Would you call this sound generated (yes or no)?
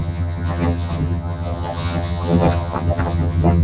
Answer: yes